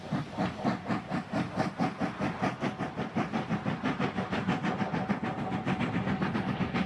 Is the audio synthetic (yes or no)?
no